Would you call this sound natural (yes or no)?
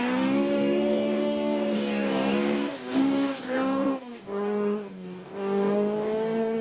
no